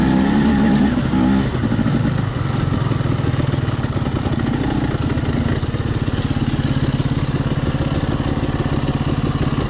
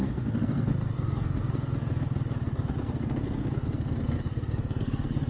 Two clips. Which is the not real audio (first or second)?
second